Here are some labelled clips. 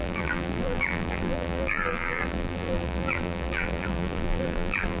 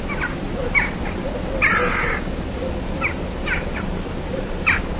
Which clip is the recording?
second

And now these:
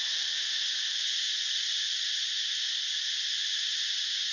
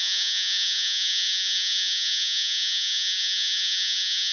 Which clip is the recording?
first